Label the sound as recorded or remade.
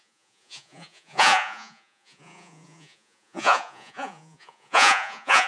remade